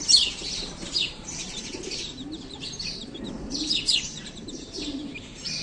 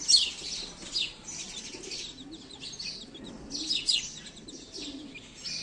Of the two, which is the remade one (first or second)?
first